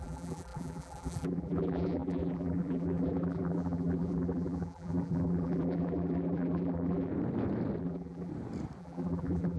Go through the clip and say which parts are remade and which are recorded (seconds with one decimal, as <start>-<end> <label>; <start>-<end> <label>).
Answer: 0.0-7.1 remade; 7.1-7.8 recorded; 7.8-8.3 remade; 8.3-8.8 recorded; 8.8-9.6 remade